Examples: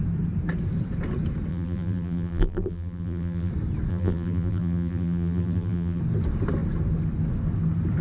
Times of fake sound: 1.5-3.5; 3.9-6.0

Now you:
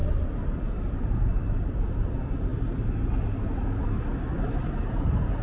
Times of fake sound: 0.0-2.5; 4.9-5.4

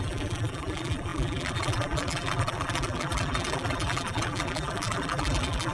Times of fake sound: 0.0-5.7

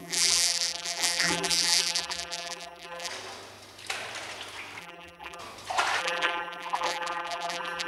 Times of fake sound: 0.0-3.1; 4.8-5.4; 6.0-7.9

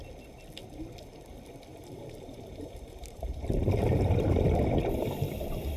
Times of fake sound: 1.7-4.6